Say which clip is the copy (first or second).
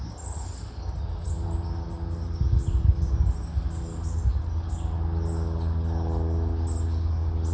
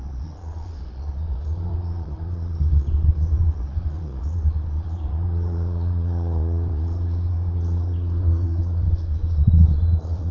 second